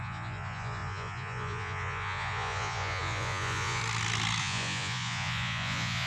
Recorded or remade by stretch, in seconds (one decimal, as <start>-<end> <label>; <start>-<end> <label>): 0.0-3.8 remade; 3.8-4.4 recorded; 4.4-6.1 remade